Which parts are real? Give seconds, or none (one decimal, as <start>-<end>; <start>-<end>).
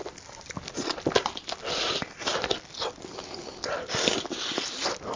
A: none